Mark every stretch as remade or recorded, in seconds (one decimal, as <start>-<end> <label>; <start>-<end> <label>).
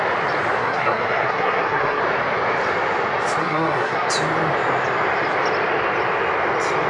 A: 0.0-0.6 recorded; 0.6-2.0 remade; 2.0-3.4 recorded; 3.4-4.1 remade; 4.1-6.9 recorded